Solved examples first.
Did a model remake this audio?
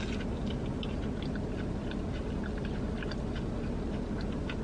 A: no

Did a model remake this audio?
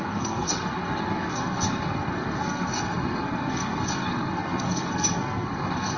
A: yes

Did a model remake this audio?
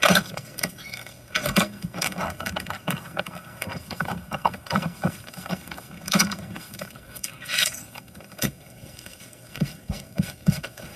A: yes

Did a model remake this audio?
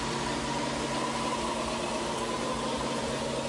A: no